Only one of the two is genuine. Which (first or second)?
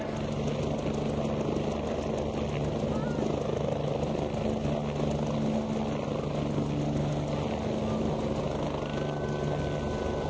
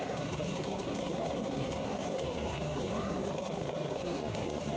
first